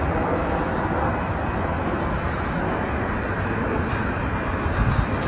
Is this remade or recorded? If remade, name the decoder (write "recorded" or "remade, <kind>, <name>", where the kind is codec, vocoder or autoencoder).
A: recorded